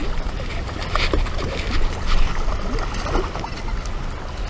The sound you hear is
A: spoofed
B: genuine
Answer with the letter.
B